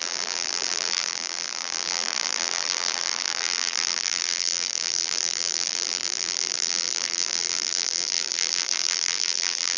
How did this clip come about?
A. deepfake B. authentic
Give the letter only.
A